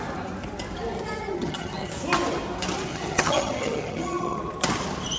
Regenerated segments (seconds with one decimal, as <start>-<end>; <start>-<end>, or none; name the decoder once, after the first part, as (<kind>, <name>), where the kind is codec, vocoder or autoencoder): 1.3-1.9 (vocoder, HiFi-GAN); 2.9-4.4